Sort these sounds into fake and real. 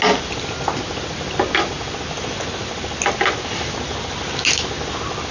real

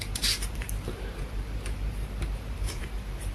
fake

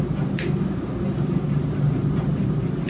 real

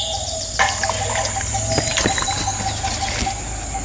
real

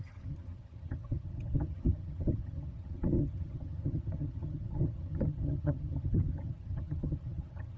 fake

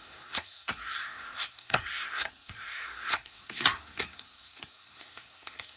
fake